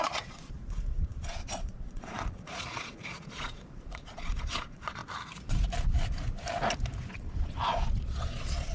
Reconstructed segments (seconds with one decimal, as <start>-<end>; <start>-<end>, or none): 0.0-5.0; 7.1-8.7